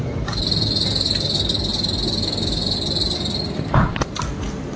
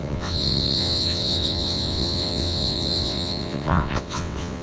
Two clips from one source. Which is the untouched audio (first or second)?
first